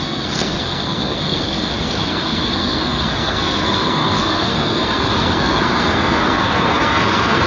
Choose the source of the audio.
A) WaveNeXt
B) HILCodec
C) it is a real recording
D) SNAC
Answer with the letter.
D